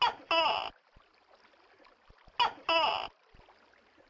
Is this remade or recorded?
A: recorded